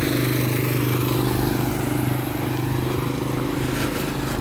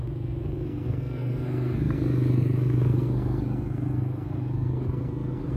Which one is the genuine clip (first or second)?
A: first